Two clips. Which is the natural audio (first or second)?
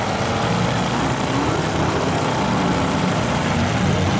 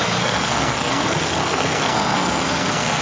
first